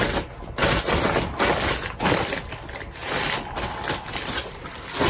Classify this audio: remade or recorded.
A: recorded